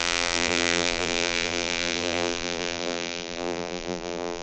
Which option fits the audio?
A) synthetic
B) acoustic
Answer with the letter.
A